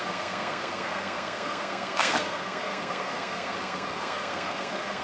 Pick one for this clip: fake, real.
fake